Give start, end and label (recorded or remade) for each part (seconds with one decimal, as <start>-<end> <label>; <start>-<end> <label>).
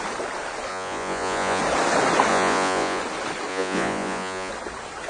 0.0-0.7 recorded; 0.7-1.6 remade; 1.6-2.3 recorded; 2.3-3.0 remade; 3.0-3.5 recorded; 3.5-4.5 remade; 4.5-5.1 recorded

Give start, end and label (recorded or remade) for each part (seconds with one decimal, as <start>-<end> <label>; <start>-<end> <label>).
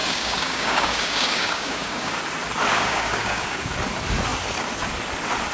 0.0-2.2 remade; 2.2-2.7 recorded; 2.7-3.7 remade; 3.7-5.5 recorded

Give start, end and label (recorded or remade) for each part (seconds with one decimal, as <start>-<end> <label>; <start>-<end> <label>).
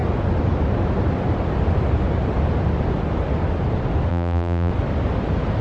0.0-4.1 recorded; 4.1-4.7 remade; 4.7-5.6 recorded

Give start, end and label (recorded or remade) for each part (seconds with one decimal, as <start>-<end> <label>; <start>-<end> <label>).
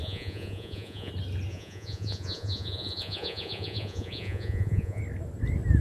0.0-1.1 remade; 1.1-1.5 recorded; 1.5-5.0 remade; 5.0-5.8 recorded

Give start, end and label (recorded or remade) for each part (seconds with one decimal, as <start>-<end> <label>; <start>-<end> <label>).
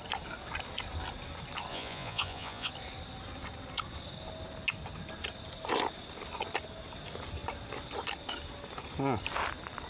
0.0-1.7 recorded; 1.7-2.7 remade; 2.7-9.9 recorded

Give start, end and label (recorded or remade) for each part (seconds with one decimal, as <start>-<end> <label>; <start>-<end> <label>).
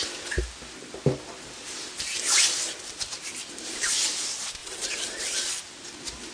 0.0-4.6 recorded; 4.6-5.6 remade; 5.6-6.3 recorded